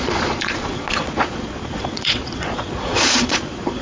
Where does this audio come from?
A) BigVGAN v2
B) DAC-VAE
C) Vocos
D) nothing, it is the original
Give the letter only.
C